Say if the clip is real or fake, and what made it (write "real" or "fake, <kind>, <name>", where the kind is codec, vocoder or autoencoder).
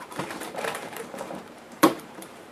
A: fake, vocoder, BigVGAN v2